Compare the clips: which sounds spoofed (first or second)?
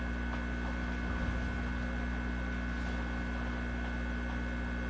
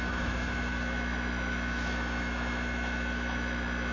second